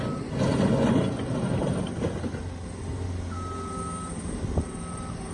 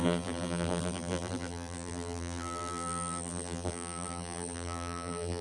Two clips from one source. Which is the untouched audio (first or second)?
first